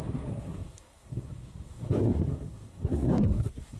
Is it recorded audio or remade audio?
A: remade